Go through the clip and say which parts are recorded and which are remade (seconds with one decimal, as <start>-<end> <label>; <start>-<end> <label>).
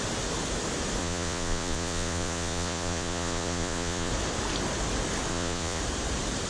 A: 0.0-1.0 recorded; 1.0-4.1 remade; 4.1-5.3 recorded; 5.3-5.8 remade; 5.8-6.5 recorded